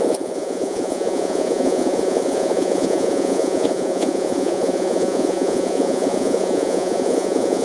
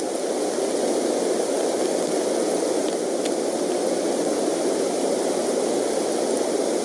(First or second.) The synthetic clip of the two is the first